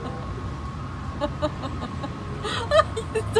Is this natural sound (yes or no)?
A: yes